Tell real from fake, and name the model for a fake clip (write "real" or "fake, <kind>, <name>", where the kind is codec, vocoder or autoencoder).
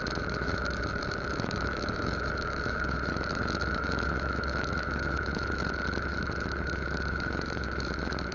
fake, autoencoder, DAC-VAE